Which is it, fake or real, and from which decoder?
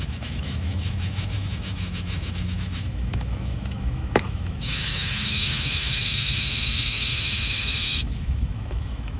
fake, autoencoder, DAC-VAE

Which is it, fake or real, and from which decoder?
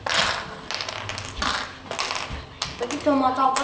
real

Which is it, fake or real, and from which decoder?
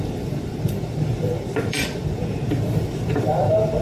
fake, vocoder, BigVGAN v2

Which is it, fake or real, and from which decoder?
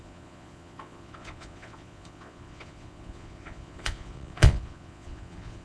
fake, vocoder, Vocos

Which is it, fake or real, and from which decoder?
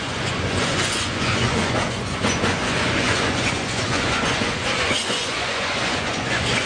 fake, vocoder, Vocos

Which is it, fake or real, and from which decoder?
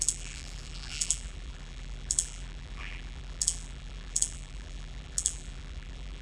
fake, vocoder, BigVGAN v2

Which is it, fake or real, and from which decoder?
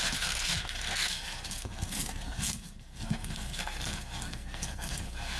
fake, codec, SNAC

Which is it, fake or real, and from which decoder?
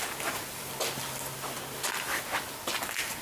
real